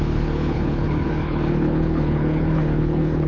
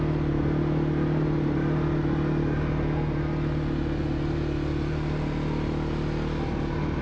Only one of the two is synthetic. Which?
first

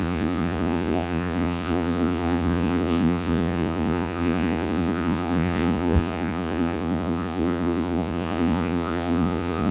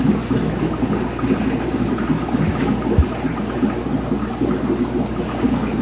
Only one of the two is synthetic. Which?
first